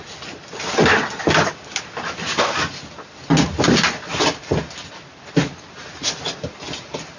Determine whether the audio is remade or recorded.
recorded